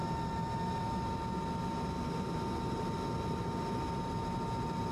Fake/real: real